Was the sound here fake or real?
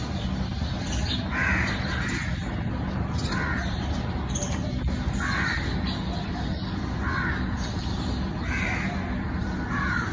real